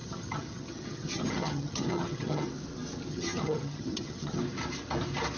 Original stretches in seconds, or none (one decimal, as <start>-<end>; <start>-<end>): 2.5-3.1; 4.4-5.4